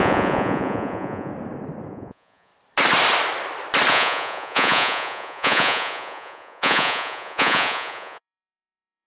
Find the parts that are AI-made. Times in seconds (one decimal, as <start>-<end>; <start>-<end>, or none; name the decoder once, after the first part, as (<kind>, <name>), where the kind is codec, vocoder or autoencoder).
0.0-1.3 (vocoder, Vocos); 1.9-2.5; 3.9-9.1